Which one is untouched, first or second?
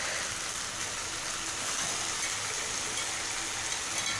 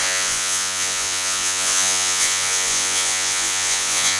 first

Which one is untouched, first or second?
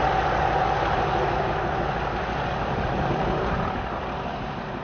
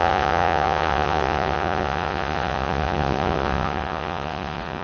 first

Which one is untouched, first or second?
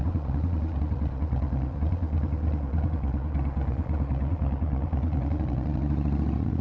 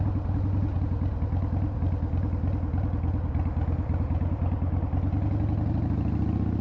second